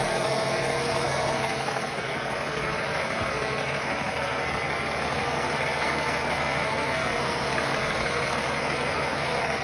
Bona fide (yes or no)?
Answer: no